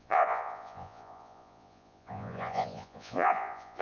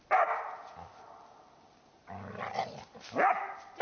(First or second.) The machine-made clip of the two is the first